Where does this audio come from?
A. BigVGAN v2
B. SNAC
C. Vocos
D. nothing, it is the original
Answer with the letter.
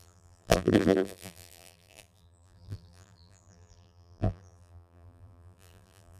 A